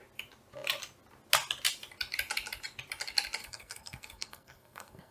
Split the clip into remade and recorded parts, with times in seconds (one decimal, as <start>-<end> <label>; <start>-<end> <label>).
0.0-3.4 recorded; 3.4-5.1 remade

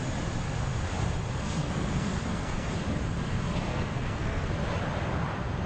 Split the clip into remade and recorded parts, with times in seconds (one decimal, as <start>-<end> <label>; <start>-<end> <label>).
0.0-1.3 recorded; 1.3-2.7 remade; 2.7-3.7 recorded; 3.7-4.5 remade; 4.5-5.7 recorded

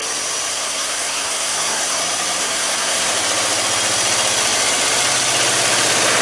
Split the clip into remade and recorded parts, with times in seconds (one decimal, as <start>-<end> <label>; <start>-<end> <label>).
0.0-0.5 recorded; 0.5-2.0 remade; 2.0-2.4 recorded; 2.4-3.1 remade; 3.1-6.2 recorded

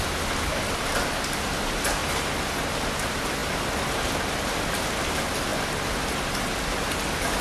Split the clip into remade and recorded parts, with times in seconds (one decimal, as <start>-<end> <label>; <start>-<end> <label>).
0.0-7.4 recorded